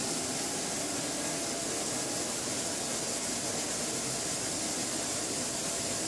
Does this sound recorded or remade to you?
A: recorded